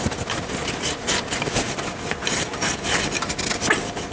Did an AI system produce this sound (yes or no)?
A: no